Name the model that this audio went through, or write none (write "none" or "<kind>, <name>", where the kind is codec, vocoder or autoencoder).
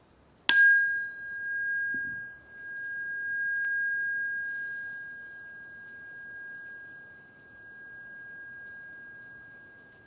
none